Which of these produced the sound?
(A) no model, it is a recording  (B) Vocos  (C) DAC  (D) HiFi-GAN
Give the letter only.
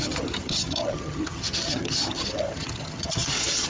D